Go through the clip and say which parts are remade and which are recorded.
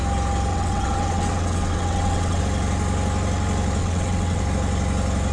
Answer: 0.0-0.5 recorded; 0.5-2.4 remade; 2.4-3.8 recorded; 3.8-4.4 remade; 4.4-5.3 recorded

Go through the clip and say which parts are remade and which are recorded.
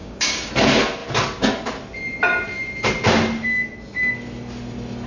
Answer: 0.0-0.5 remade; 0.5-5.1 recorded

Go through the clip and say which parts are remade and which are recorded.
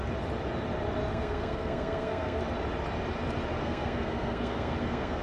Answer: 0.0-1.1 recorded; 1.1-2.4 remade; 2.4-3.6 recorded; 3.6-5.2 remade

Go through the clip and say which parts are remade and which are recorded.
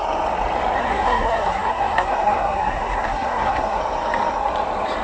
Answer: 0.0-0.8 recorded; 0.8-3.8 remade; 3.8-5.0 recorded